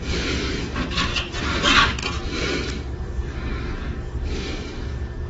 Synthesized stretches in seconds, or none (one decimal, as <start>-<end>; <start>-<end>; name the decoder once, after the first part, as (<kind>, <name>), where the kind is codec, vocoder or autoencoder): 0.0-1.1 (codec, DAC); 1.6-2.0; 2.9-5.3

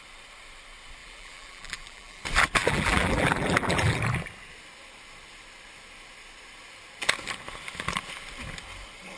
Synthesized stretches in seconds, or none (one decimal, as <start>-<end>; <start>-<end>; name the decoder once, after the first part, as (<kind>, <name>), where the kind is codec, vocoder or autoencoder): 1.0-2.2 (vocoder, BigVGAN v2); 2.6-4.0